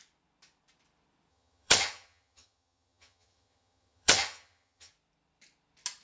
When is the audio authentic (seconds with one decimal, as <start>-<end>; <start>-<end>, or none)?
0.0-1.3; 4.9-6.0